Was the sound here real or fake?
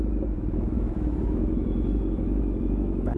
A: fake